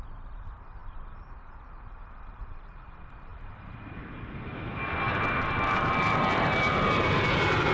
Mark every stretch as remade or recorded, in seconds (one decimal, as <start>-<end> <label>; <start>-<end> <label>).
0.0-7.7 remade